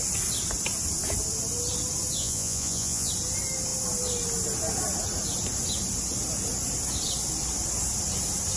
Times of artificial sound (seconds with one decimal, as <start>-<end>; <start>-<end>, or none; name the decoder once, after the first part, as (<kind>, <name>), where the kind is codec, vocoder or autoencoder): 2.2-3.1 (vocoder, Vocos)

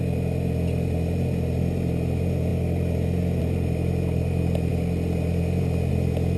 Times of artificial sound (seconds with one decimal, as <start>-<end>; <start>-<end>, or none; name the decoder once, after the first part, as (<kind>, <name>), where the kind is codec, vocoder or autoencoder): none

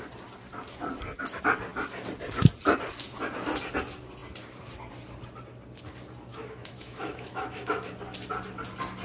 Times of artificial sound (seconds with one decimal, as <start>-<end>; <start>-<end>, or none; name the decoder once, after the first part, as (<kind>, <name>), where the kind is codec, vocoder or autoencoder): 6.3-7.9 (autoencoder, DAC-VAE)

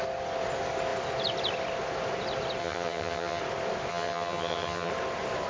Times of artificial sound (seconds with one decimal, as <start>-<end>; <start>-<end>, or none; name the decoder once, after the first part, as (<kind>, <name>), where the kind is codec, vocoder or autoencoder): 2.6-3.4 (vocoder, HiFi-GAN); 3.9-4.9